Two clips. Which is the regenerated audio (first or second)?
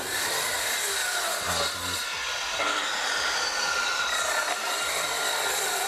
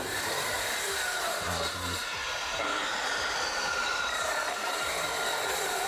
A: second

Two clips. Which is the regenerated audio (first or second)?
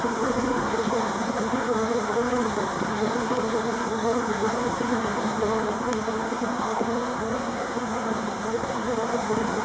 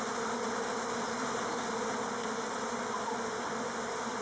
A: first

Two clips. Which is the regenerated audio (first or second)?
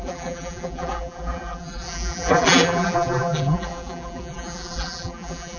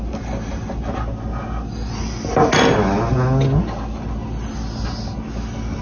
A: first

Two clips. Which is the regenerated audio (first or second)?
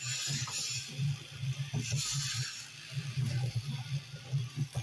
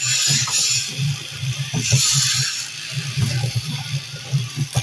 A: second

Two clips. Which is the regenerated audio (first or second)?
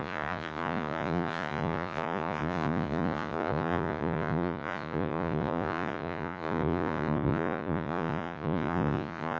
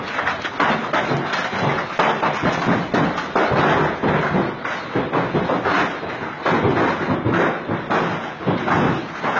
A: first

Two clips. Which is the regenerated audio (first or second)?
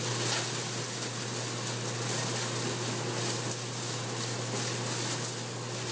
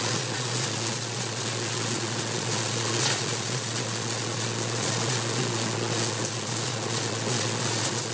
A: second